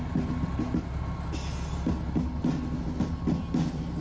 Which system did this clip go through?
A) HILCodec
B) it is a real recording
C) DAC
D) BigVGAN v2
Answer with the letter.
B